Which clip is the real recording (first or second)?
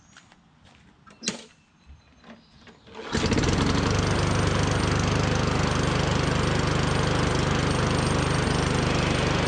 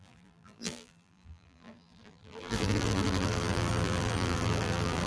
first